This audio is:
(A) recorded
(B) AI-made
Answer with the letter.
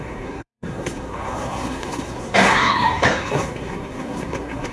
B